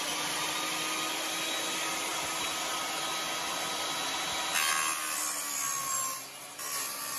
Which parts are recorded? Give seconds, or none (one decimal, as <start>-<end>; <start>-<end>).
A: 0.0-7.2